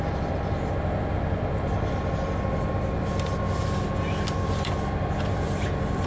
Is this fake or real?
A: real